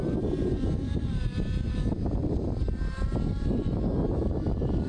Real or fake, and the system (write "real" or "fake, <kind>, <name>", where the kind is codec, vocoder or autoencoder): real